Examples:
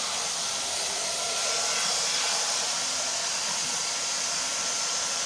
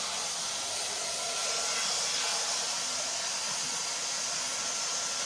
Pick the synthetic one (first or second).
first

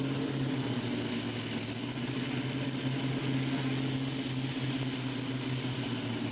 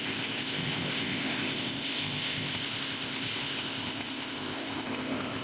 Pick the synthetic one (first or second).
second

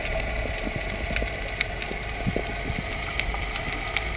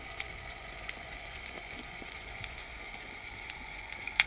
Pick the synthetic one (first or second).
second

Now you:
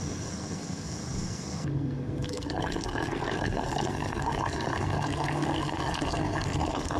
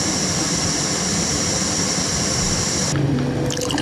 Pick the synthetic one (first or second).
first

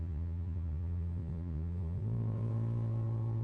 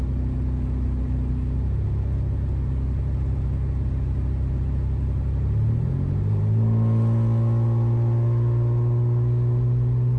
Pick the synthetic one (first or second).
first